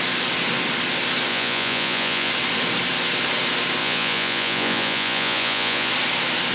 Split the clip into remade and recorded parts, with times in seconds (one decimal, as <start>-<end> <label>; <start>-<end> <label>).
0.0-1.3 recorded; 1.3-2.3 remade; 2.3-3.8 recorded; 3.8-5.9 remade; 5.9-6.5 recorded